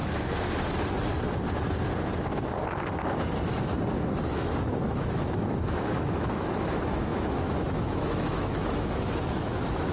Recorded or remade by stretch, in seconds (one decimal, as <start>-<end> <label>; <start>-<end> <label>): 0.0-4.3 recorded; 4.3-9.9 remade